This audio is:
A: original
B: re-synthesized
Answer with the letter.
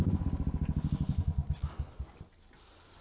A